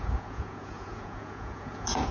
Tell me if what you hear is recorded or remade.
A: remade